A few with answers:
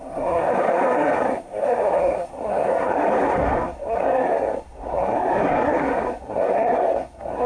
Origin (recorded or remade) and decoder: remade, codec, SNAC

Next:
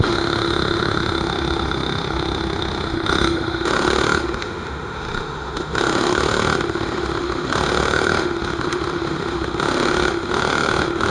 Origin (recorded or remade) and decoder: remade, autoencoder, DAC-VAE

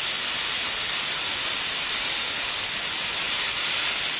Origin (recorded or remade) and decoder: recorded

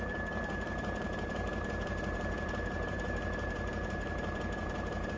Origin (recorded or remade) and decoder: remade, vocoder, BigVGAN v2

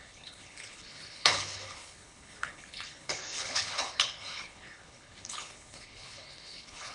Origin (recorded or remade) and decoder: remade, codec, HILCodec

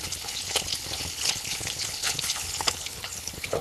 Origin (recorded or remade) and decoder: remade, codec, HILCodec